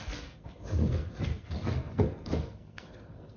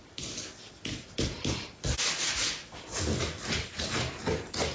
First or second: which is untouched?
second